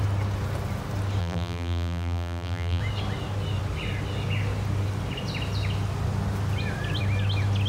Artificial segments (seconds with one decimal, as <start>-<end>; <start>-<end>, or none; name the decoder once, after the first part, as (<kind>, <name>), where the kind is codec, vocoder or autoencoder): 1.2-2.8 (vocoder, BigVGAN v2)